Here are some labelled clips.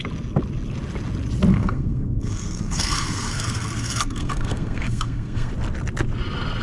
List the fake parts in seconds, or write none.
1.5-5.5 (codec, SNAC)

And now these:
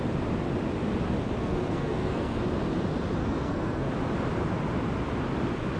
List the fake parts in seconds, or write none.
1.4-2.4 (codec, SNAC); 3.2-3.9

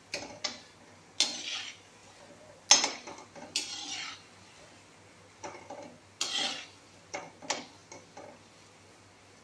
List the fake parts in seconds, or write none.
none

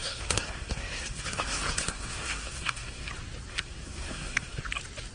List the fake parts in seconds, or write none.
0.0-3.1 (codec, SNAC); 3.5-4.6

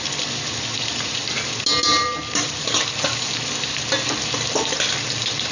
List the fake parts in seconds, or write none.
1.9-3.8 (vocoder, BigVGAN v2)

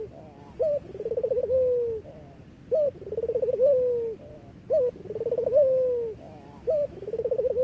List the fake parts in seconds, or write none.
1.4-2.0 (autoencoder, DAC-VAE); 4.3-7.6

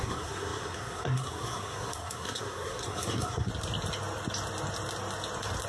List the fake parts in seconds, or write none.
0.0-3.5 (codec, SNAC)

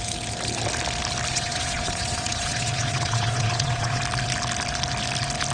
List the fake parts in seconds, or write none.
1.3-4.0 (vocoder, Vocos)